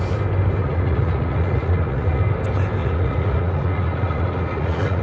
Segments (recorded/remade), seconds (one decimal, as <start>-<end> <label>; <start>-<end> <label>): 0.0-0.6 recorded; 0.6-2.2 remade; 2.2-2.8 recorded; 2.8-5.0 remade